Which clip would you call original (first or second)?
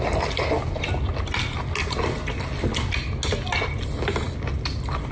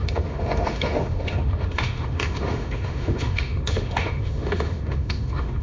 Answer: first